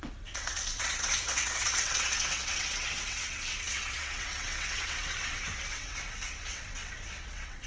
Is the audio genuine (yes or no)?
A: no